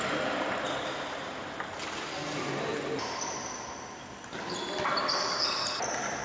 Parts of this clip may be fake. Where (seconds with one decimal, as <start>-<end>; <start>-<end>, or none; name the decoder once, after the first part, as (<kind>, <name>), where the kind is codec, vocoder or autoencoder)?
none